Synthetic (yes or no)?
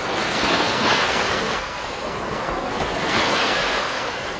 yes